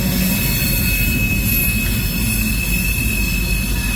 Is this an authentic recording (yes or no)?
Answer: yes